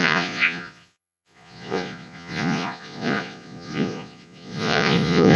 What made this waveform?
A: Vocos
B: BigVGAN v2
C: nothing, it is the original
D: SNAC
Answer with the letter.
A